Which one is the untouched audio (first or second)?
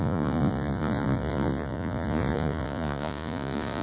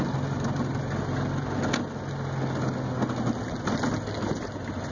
second